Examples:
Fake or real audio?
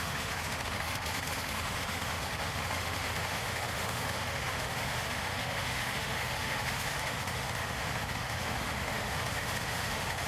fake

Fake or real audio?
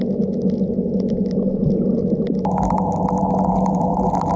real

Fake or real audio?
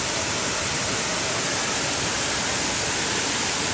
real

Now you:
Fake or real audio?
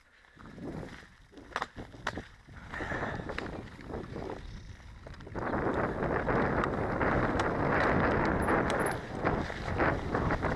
real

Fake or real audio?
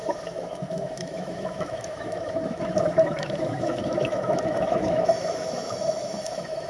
fake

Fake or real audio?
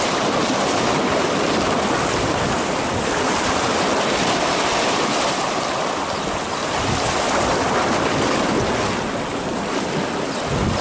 real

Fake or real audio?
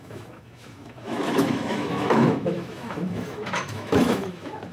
fake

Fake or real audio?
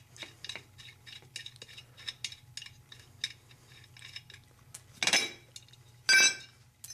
real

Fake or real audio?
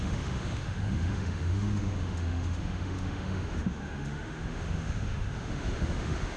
fake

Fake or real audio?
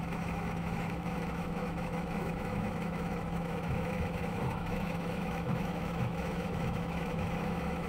fake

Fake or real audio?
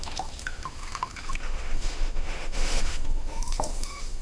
fake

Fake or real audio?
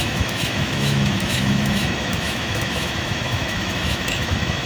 fake